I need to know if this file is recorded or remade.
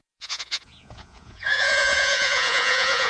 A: remade